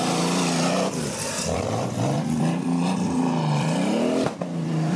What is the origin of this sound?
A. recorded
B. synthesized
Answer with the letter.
B